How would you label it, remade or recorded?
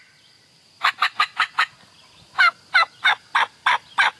recorded